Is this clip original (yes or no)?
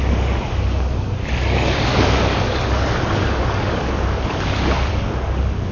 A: no